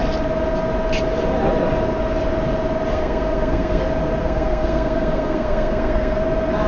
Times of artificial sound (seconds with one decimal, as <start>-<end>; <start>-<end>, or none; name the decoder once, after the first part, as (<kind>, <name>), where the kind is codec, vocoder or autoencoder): 2.9-3.8 (codec, SNAC); 4.2-6.2